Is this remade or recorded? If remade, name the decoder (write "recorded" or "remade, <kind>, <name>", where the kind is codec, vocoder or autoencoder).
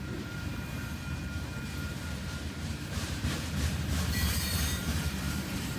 remade, vocoder, BigVGAN v2